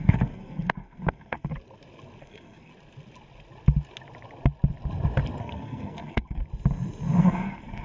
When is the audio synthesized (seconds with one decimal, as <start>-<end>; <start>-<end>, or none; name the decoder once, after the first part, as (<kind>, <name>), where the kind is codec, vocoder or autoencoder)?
0.0-1.5 (codec, SNAC); 2.2-2.7; 5.4-6.4; 7.2-7.8